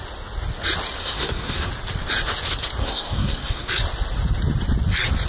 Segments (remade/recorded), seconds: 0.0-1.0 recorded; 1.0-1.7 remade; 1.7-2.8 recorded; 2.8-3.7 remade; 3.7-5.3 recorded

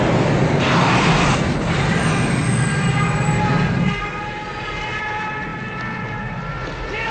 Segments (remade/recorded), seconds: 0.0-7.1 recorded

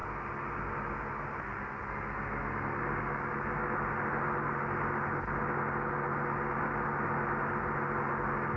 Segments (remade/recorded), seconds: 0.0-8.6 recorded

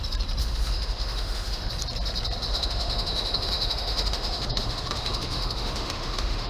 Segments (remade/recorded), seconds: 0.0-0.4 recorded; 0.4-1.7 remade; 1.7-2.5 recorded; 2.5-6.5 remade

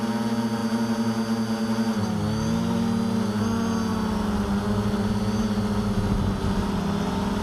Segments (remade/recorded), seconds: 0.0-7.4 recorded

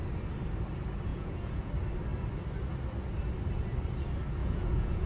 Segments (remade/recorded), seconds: 0.0-1.1 recorded; 1.1-1.7 remade; 1.7-4.4 recorded; 4.4-5.1 remade

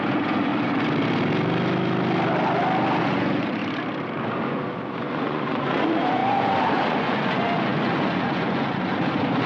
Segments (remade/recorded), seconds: 0.0-0.5 remade; 0.5-3.0 recorded; 3.0-3.6 remade; 3.6-4.4 recorded; 4.4-9.5 remade